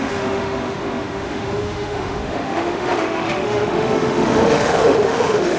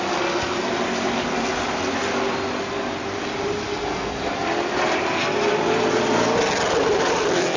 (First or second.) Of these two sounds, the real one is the second